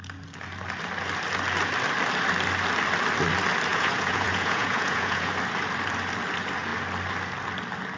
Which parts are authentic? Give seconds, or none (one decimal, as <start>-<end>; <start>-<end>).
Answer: 0.0-3.7; 5.3-8.0